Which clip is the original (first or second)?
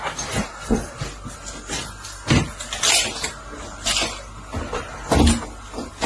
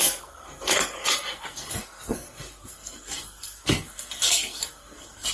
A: first